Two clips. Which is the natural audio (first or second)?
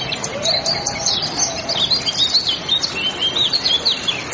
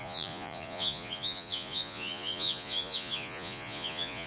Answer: first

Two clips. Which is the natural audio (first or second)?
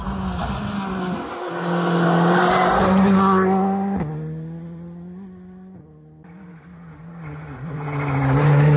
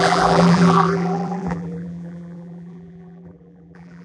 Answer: first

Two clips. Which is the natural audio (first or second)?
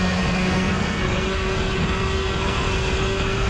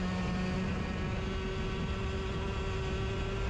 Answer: second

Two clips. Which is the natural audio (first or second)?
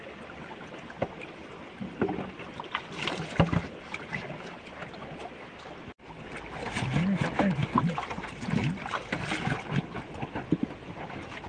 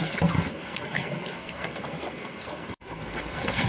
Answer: first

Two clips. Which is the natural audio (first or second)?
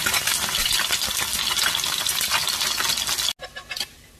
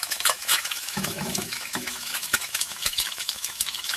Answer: first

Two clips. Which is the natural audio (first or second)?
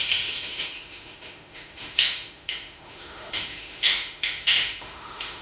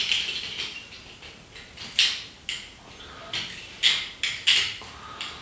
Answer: second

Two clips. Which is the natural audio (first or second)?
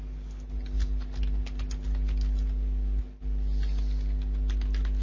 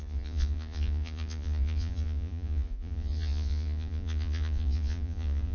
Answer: first